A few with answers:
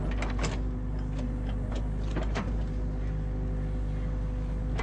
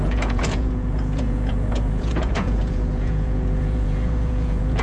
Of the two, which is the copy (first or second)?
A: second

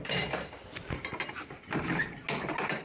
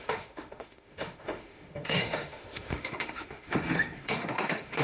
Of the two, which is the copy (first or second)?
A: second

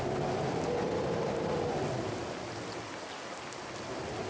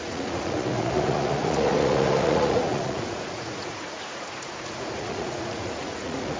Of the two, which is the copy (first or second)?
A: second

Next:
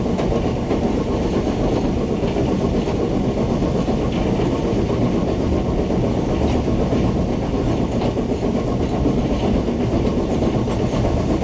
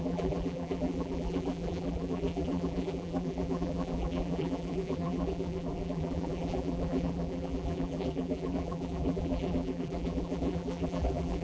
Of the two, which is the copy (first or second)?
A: second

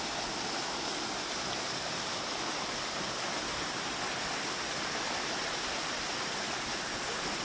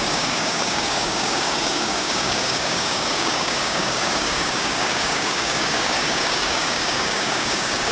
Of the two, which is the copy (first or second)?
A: second